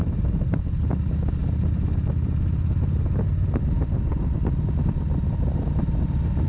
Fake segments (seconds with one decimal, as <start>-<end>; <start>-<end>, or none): none